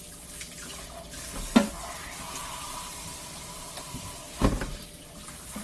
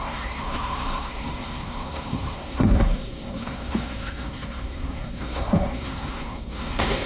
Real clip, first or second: first